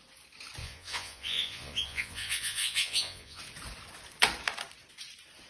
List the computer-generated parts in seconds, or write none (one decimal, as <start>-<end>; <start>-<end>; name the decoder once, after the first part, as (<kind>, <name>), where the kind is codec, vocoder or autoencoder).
0.6-3.4 (vocoder, Vocos)